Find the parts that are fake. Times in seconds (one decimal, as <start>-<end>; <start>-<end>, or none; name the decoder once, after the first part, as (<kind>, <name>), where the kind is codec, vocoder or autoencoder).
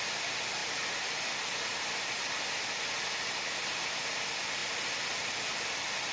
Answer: none